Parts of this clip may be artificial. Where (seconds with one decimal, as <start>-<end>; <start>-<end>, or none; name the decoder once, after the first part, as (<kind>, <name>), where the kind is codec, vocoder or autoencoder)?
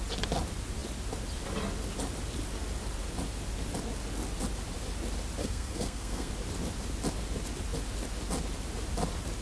5.4-6.3 (codec, SNAC)